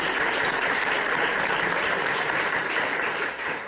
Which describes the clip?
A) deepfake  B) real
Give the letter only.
A